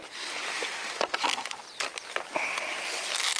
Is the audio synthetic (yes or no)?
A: no